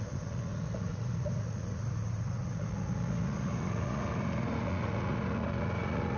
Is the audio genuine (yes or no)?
no